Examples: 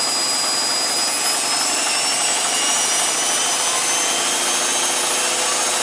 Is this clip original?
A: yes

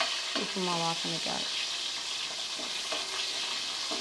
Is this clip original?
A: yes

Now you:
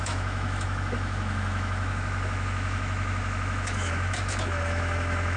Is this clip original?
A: no